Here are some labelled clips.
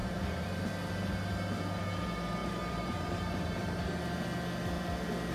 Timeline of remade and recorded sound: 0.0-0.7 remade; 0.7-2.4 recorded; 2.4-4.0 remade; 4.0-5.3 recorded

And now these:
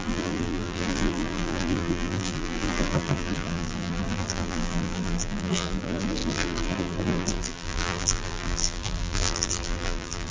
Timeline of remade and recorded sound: 0.0-10.3 remade

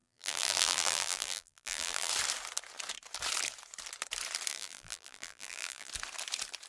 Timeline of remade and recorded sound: 0.0-2.1 remade; 2.1-4.5 recorded; 4.5-5.9 remade; 5.9-6.7 recorded

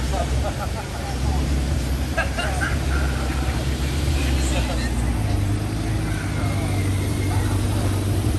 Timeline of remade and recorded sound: 0.0-4.2 remade; 4.2-6.8 recorded; 6.8-8.4 remade

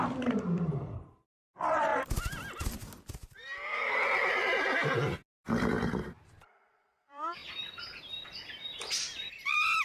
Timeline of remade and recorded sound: 0.0-1.9 remade; 1.9-6.7 recorded; 6.7-7.4 remade; 7.4-8.0 recorded; 8.0-9.8 remade

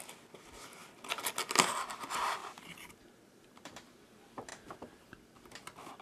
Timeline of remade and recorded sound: 0.0-2.4 recorded; 2.4-4.0 remade; 4.0-6.0 recorded

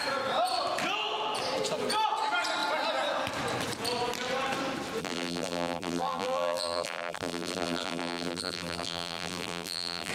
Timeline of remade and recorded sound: 0.0-5.0 recorded; 5.0-10.1 remade

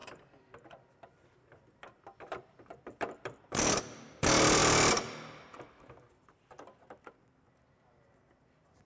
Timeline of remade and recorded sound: 0.0-3.8 remade; 3.8-8.8 recorded